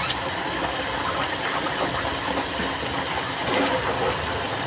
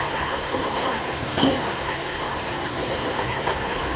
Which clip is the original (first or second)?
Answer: first